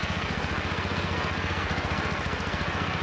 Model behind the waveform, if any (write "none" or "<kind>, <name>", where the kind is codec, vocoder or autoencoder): codec, SNAC